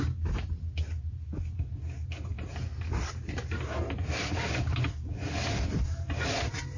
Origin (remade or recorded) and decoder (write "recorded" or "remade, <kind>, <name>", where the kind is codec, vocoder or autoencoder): recorded